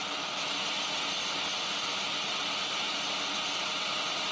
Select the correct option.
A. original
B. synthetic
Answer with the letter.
A